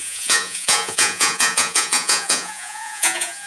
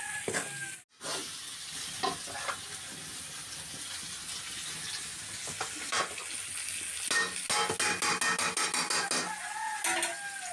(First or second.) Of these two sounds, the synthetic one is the first